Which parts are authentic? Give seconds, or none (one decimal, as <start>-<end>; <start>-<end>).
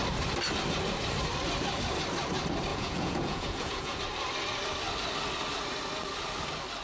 0.0-2.7; 4.0-6.8